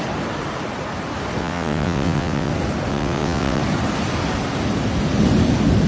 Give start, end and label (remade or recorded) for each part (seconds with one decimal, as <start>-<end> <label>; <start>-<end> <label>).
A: 0.0-1.4 recorded; 1.4-2.5 remade; 2.5-2.9 recorded; 2.9-3.6 remade; 3.6-5.9 recorded